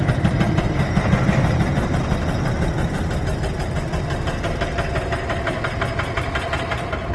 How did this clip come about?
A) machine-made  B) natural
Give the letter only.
B